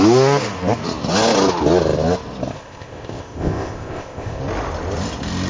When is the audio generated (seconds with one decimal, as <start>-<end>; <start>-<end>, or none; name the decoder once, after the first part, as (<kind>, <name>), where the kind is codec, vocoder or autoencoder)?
2.5-4.4 (codec, ZipCodec)